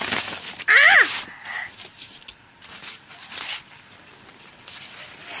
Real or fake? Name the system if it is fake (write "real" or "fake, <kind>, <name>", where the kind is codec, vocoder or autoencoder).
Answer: real